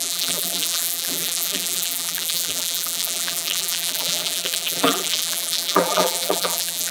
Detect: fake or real fake